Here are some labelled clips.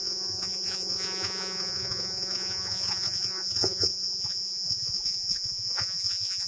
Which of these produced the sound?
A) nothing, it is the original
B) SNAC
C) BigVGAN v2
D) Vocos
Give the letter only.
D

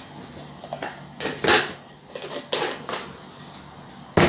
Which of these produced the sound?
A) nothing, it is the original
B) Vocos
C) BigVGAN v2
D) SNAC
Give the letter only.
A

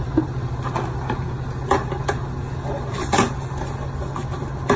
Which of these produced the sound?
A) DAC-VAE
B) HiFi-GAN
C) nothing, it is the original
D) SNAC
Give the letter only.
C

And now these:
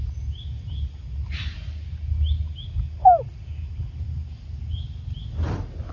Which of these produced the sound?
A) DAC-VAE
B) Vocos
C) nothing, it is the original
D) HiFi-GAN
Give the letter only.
C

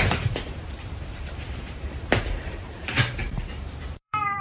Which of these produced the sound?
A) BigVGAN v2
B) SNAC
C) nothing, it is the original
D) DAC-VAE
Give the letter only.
A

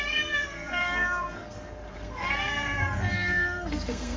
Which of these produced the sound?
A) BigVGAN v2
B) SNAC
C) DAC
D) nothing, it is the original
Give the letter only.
B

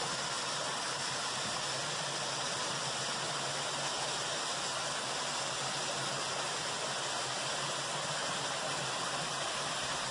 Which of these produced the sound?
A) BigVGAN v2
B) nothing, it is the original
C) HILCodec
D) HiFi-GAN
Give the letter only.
B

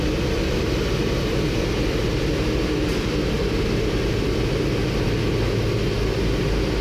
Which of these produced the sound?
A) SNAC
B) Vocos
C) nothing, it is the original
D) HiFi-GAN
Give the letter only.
C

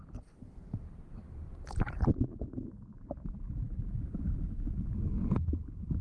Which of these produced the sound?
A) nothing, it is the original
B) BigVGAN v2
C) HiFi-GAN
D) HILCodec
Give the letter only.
B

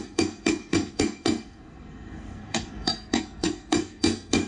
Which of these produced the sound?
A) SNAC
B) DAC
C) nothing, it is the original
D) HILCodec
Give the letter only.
A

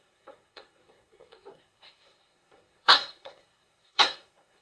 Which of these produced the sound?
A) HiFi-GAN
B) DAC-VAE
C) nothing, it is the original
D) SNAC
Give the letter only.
D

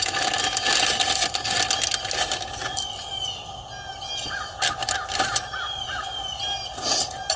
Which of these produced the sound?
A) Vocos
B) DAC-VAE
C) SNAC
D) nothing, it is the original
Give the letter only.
D